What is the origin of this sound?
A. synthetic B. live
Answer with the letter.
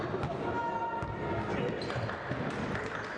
B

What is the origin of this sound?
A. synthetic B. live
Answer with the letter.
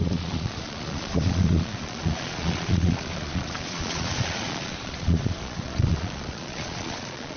A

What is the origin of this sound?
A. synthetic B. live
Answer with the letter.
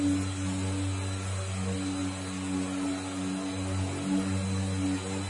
B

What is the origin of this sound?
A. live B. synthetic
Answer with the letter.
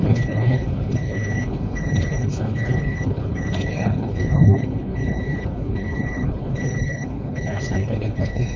B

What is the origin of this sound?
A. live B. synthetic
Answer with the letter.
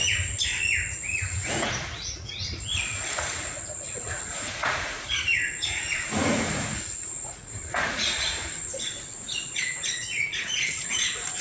B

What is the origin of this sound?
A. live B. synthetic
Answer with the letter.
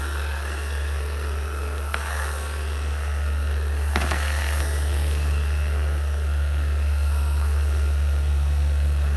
B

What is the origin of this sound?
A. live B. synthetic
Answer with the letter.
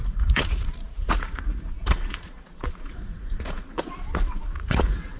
B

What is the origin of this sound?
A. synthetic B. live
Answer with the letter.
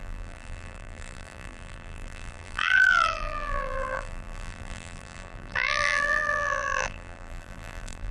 A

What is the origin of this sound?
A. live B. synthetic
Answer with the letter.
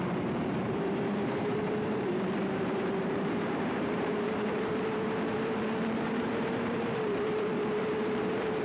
B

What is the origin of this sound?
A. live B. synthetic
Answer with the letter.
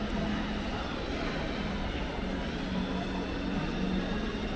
A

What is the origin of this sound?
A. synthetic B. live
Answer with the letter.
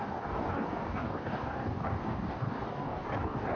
A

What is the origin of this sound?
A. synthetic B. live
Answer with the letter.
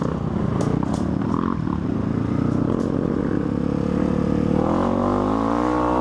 B